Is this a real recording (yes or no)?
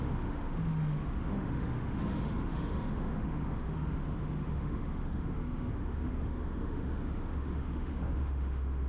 no